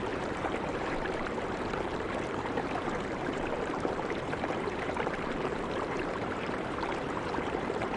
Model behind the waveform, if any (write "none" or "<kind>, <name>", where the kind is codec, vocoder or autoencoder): vocoder, BigVGAN v2